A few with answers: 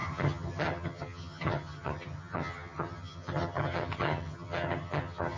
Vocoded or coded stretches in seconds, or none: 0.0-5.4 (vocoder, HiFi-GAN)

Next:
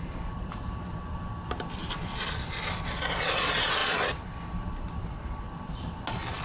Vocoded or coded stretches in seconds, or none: none

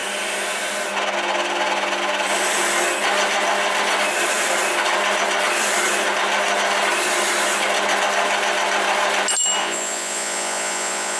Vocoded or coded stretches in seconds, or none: 9.6-11.2 (vocoder, Vocos)

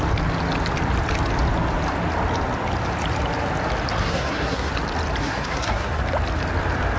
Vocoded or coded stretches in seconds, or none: 4.0-4.7 (codec, SNAC); 5.2-6.0

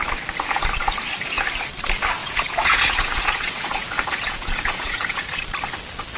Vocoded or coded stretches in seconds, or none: 2.2-5.4 (vocoder, Vocos)

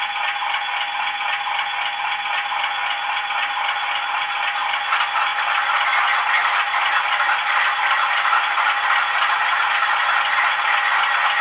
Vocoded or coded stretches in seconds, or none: none

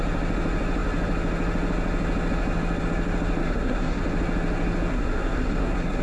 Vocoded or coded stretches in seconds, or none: 3.4-4.0 (codec, SNAC); 4.9-6.0